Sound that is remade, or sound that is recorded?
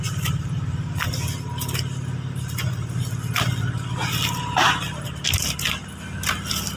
recorded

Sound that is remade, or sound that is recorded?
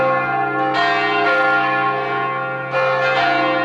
recorded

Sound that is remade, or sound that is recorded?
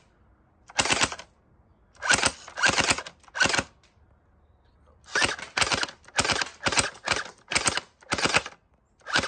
recorded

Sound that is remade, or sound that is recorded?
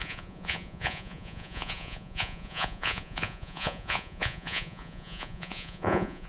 remade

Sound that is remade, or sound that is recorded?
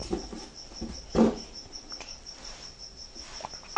recorded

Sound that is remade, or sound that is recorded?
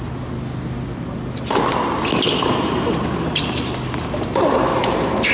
recorded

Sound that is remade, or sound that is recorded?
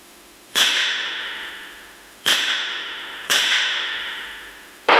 remade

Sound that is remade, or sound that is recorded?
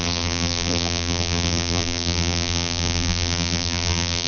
remade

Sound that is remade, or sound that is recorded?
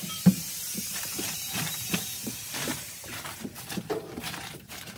remade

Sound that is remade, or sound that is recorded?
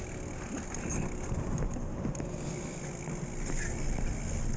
recorded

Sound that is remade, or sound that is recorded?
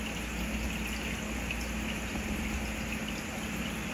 recorded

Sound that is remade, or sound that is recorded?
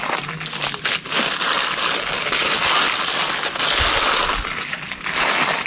recorded